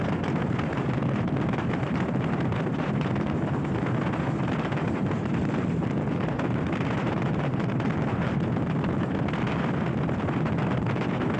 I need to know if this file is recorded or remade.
recorded